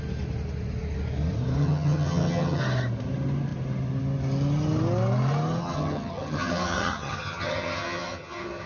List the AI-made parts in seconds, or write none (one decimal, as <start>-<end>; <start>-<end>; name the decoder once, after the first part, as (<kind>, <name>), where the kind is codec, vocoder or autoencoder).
1.6-2.6 (vocoder, HiFi-GAN); 5.6-8.7